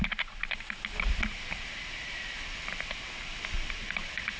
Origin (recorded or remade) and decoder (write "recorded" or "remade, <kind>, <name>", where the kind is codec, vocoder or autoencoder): recorded